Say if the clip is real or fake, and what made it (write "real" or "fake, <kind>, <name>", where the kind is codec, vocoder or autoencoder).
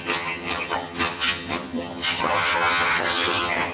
fake, vocoder, HiFi-GAN